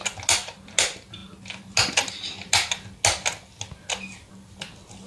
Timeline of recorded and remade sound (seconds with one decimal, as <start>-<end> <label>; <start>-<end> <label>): 0.0-5.1 recorded